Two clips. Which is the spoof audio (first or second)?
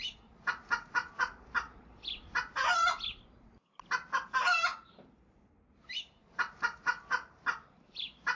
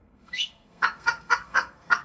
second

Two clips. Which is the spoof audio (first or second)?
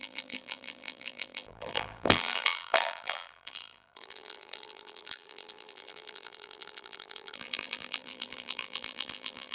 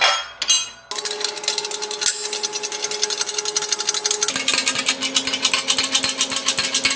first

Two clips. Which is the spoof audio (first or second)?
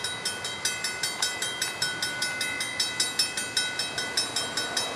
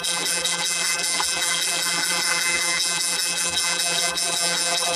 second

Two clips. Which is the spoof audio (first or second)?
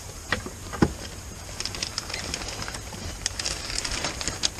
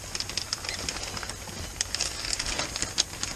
first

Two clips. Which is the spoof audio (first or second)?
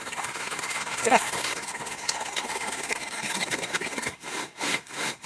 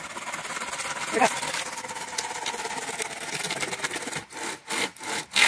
first